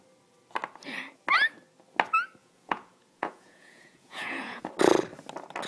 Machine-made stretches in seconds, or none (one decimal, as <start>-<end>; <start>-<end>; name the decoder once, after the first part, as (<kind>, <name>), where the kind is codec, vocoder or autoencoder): 2.4-4.7 (vocoder, Vocos)